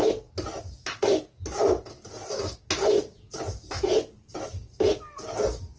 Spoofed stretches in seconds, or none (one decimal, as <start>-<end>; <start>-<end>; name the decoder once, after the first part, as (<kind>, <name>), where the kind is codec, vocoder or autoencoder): none